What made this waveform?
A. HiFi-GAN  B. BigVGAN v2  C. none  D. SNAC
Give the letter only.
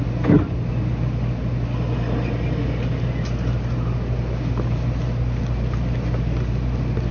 C